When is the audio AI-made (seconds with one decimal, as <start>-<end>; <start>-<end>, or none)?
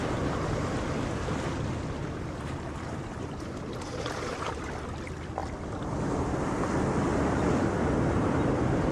2.0-4.1; 5.4-6.3; 7.1-8.5